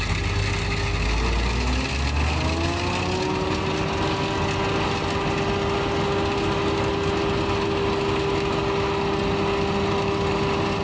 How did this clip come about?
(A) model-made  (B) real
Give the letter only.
B